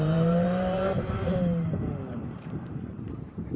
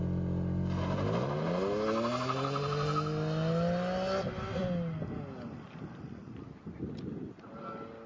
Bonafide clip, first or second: second